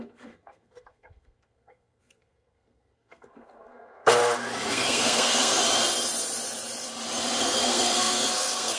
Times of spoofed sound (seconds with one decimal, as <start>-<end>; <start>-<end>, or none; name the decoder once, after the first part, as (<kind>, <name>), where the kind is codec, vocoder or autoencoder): 0.0-4.2 (codec, SNAC); 4.7-5.6; 7.4-8.8